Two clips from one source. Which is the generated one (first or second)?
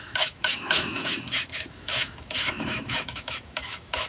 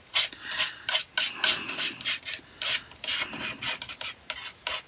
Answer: first